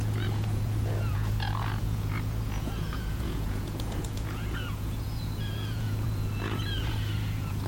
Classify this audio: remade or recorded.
remade